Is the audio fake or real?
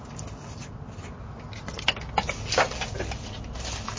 real